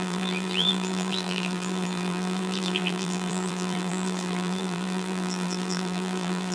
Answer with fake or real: fake